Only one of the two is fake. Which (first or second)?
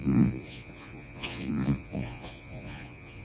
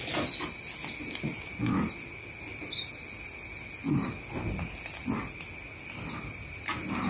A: first